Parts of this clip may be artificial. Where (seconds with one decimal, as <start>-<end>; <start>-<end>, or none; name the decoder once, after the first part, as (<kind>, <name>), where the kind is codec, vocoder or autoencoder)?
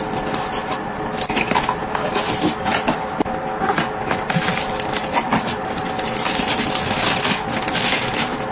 none